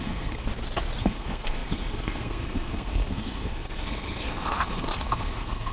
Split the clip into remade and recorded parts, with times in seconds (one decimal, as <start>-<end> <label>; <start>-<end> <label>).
0.0-0.5 remade; 0.5-1.0 recorded; 1.0-5.7 remade